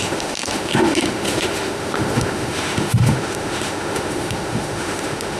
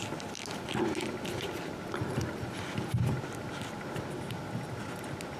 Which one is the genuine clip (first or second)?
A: second